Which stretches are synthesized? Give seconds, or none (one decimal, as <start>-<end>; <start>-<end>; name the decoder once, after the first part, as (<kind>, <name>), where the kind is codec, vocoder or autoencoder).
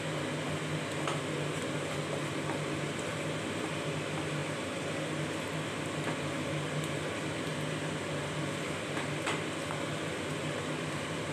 none